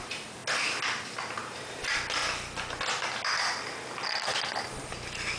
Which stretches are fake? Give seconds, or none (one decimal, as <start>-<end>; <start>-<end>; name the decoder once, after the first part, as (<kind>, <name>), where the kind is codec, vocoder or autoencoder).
0.0-0.4 (vocoder, BigVGAN v2); 1.4-2.2